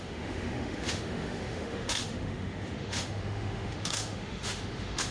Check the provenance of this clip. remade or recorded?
remade